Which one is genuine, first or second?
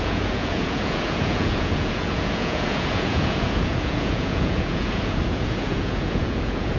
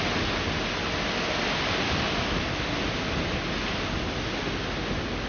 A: second